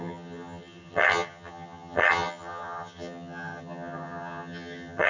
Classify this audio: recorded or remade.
remade